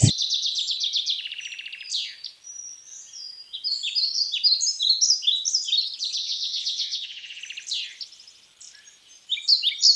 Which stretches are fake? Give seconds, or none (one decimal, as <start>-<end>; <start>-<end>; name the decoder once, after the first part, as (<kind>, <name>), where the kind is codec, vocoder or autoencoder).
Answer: 6.2-7.4 (vocoder, WaveNeXt)